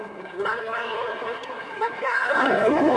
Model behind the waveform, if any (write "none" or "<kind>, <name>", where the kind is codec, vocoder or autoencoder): codec, SNAC